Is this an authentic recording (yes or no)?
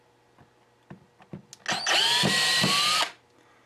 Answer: yes